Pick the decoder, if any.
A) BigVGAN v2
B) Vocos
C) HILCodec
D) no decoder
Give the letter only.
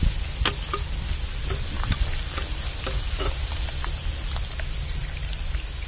D